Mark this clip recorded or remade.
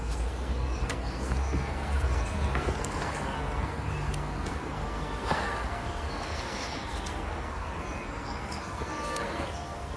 remade